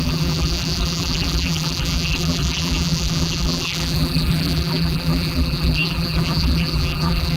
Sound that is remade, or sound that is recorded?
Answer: remade